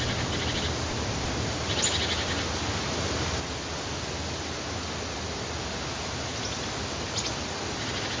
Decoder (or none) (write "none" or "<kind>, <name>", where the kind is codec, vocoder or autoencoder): none